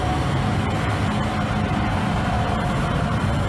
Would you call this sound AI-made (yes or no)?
no